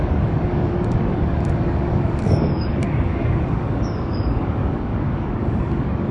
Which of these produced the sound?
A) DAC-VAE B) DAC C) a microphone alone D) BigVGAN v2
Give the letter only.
B